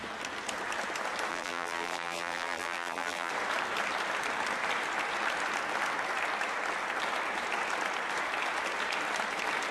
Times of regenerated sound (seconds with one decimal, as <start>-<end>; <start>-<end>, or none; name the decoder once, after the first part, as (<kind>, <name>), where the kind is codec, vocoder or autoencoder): 1.3-3.3 (vocoder, BigVGAN v2)